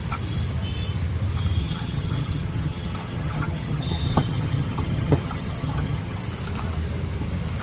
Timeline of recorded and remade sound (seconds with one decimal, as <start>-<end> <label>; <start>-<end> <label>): 0.0-1.6 recorded; 1.6-6.2 remade; 6.2-7.6 recorded